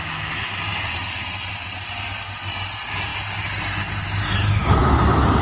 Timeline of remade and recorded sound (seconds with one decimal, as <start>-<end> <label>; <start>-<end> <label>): 0.0-5.4 recorded

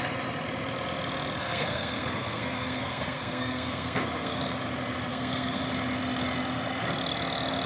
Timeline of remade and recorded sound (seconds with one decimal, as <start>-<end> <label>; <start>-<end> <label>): 0.0-1.4 recorded; 1.4-4.4 remade; 4.4-5.1 recorded; 5.1-5.6 remade; 5.6-7.7 recorded

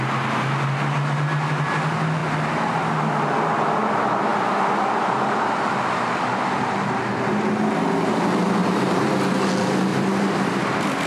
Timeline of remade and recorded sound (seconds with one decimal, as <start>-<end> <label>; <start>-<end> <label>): 0.0-2.2 recorded; 2.2-2.9 remade; 2.9-8.6 recorded; 8.6-9.5 remade; 9.5-9.9 recorded; 9.9-10.6 remade; 10.6-11.1 recorded

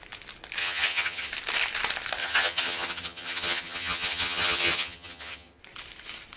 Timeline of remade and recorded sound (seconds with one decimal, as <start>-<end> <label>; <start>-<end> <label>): 0.0-0.6 recorded; 0.6-1.3 remade; 1.3-2.2 recorded; 2.2-5.6 remade; 5.6-6.4 recorded

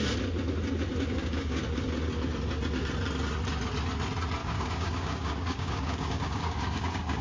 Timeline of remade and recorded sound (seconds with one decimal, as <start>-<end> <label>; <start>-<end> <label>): 0.0-0.9 recorded; 0.9-1.6 remade; 1.6-4.4 recorded; 4.4-7.2 remade

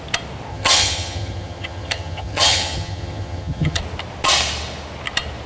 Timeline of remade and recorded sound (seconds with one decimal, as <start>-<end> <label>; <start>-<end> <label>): 0.0-0.5 recorded; 0.5-3.8 remade; 3.8-5.5 recorded